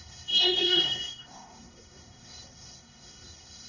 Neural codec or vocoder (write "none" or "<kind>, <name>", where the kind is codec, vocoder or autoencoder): codec, SNAC